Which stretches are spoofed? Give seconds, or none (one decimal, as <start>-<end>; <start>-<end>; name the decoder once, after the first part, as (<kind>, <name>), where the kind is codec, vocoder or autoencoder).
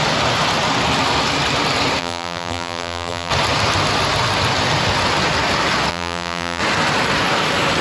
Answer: 2.0-3.3 (vocoder, BigVGAN v2); 5.9-6.6